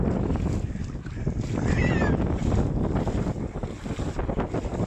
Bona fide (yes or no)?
yes